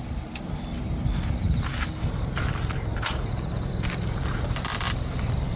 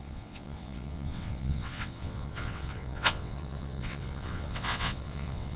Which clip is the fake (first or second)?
second